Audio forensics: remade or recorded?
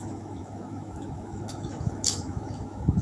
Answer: remade